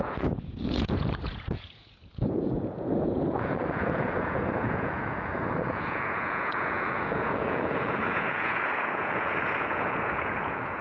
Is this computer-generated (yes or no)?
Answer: yes